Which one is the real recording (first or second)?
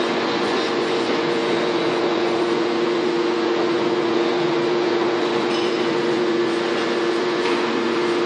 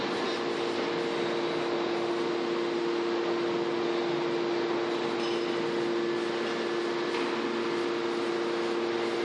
second